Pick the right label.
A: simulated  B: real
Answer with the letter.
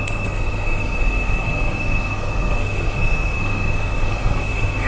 A